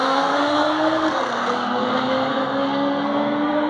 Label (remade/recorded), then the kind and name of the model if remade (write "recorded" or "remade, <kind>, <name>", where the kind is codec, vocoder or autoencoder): remade, codec, SNAC